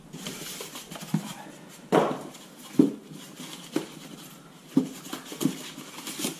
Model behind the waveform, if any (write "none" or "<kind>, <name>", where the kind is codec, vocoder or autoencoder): none